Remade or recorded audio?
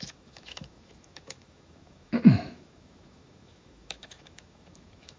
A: remade